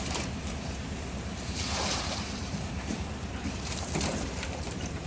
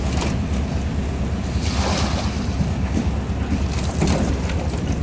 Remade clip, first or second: first